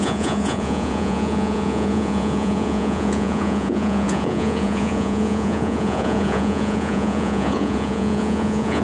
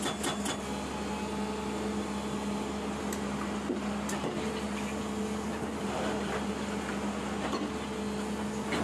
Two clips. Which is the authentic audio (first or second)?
second